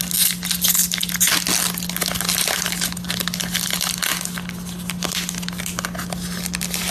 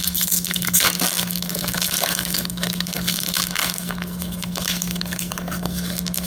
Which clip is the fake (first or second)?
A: second